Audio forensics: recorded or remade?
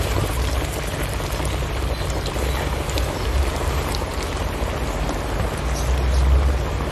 recorded